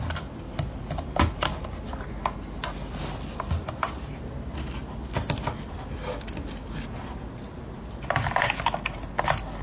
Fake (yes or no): no